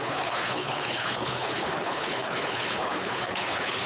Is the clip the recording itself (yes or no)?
no